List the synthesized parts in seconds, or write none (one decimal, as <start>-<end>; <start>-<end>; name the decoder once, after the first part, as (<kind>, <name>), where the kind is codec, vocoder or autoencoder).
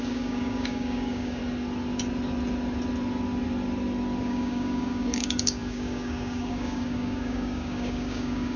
0.0-1.4 (codec, DAC); 4.2-8.6